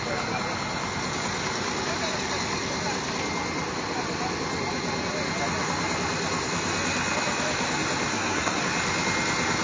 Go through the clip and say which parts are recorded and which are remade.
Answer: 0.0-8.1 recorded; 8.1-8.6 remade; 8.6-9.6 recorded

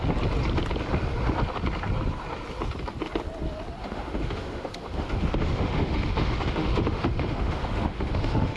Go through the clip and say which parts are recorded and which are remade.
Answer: 0.0-3.8 recorded; 3.8-8.6 remade

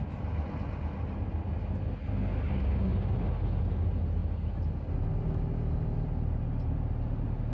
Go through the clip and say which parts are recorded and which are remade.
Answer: 0.0-7.5 recorded

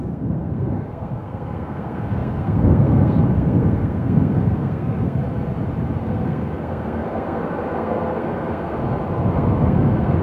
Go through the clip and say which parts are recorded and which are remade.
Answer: 0.0-5.2 remade; 5.2-6.0 recorded; 6.0-8.8 remade; 8.8-9.3 recorded; 9.3-10.2 remade

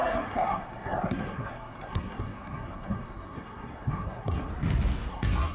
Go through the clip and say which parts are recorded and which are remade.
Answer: 0.0-4.5 remade; 4.5-5.1 recorded; 5.1-5.5 remade

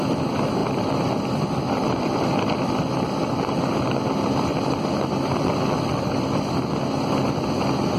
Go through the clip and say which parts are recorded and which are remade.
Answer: 0.0-0.6 recorded; 0.6-3.2 remade; 3.2-4.5 recorded; 4.5-6.5 remade; 6.5-8.0 recorded

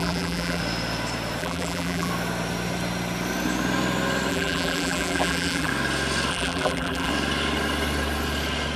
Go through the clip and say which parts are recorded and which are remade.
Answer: 0.0-0.6 remade; 0.6-1.4 recorded; 1.4-2.1 remade; 2.1-4.3 recorded; 4.3-5.7 remade; 5.7-6.3 recorded; 6.3-7.1 remade; 7.1-8.8 recorded